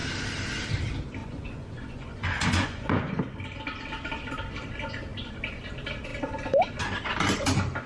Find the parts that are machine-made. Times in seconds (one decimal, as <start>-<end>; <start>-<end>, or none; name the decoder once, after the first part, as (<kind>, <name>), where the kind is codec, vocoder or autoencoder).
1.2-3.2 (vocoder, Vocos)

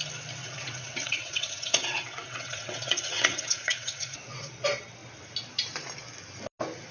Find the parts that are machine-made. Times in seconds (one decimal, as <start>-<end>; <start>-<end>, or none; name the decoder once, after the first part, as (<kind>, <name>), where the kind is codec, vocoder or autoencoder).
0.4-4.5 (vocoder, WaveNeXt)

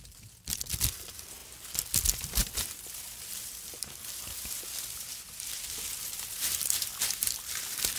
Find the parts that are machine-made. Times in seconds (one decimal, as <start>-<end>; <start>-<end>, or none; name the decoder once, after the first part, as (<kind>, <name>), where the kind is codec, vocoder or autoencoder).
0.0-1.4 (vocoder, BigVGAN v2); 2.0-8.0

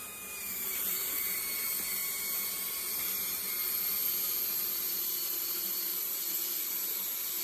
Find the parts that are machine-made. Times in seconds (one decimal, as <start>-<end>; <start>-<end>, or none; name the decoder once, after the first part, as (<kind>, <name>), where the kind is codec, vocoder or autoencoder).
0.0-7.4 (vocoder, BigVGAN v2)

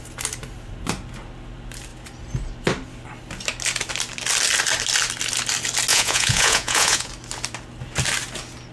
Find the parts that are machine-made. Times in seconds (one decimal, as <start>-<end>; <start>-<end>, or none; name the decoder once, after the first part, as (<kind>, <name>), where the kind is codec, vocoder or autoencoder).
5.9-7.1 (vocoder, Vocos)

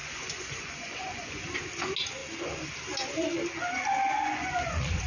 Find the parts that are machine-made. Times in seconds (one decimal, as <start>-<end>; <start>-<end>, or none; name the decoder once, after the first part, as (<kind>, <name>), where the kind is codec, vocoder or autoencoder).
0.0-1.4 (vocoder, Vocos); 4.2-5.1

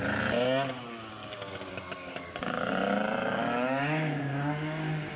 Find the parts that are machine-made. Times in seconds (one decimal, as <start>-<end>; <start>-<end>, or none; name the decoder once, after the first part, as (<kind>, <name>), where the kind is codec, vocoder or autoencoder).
1.2-2.7 (codec, DAC); 3.2-5.2

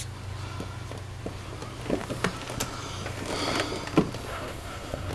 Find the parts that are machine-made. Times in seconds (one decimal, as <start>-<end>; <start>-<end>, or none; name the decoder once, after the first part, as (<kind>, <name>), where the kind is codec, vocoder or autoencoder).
4.3-5.1 (codec, SNAC)